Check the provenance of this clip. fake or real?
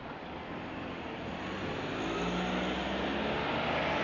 real